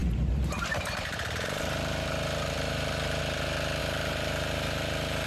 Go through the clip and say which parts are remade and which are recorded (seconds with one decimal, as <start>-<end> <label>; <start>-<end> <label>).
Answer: 0.0-3.2 remade; 3.2-3.8 recorded; 3.8-5.3 remade